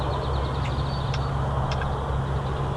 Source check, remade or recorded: recorded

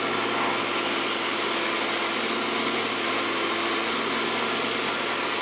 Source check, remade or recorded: recorded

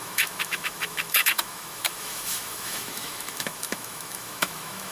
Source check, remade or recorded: remade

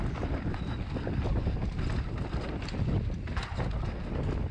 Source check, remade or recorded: recorded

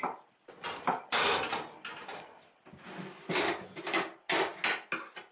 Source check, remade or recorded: recorded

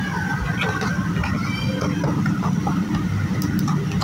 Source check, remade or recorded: recorded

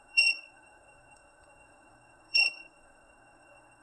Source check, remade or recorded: remade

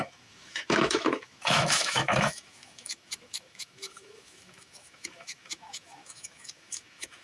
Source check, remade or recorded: remade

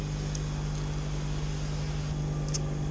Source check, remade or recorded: recorded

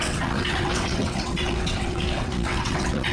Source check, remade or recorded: remade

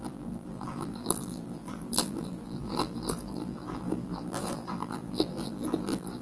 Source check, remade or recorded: remade